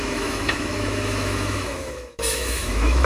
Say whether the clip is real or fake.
fake